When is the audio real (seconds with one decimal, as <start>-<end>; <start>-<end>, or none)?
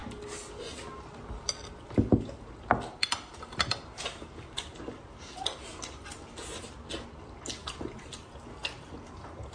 0.0-9.5